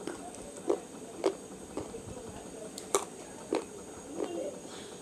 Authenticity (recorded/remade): recorded